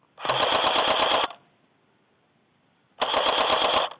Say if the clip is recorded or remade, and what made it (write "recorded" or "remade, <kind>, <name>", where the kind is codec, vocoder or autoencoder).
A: recorded